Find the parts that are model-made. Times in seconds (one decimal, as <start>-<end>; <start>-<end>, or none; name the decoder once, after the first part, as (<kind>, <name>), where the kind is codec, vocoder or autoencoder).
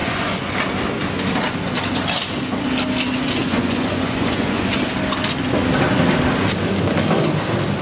0.0-0.5 (vocoder, Vocos); 3.4-4.7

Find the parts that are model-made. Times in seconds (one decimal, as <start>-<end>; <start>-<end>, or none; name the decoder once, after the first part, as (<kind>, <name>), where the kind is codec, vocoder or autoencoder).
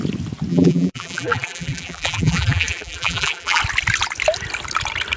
0.5-3.6 (vocoder, BigVGAN v2)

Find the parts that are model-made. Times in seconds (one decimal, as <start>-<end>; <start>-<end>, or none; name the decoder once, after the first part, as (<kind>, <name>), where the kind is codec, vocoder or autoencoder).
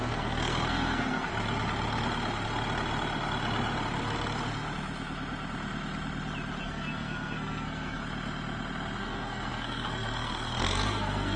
0.0-1.3 (codec, SNAC); 6.6-8.0; 9.0-11.4